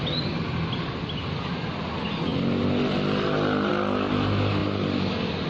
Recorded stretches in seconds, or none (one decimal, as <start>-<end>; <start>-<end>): 0.0-5.5